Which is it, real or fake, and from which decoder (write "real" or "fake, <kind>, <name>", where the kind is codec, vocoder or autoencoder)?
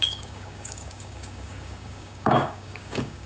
fake, codec, DAC